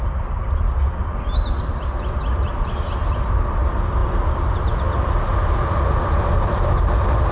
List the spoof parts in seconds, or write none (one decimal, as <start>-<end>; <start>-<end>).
none